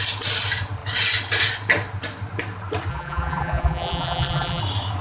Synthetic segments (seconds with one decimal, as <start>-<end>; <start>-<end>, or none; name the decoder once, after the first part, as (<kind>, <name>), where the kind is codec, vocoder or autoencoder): 2.9-4.6 (vocoder, BigVGAN v2)